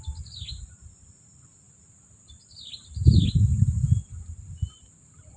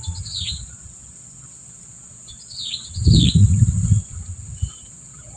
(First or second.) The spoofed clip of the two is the second